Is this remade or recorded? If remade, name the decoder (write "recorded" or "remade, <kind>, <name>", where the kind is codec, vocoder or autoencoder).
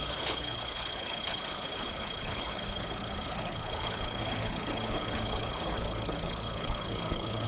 remade, codec, HILCodec